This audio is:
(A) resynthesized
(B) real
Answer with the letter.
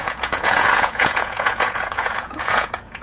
A